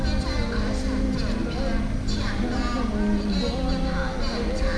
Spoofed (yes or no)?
no